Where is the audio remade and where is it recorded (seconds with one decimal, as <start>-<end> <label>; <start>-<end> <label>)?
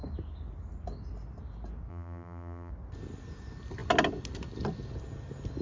0.0-1.9 recorded; 1.9-2.7 remade; 2.7-5.6 recorded